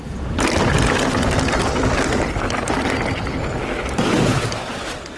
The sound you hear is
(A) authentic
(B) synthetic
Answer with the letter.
A